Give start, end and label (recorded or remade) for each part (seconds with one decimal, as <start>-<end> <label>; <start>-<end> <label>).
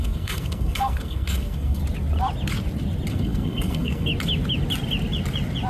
0.0-1.8 remade; 1.8-3.1 recorded; 3.1-4.1 remade; 4.1-5.7 recorded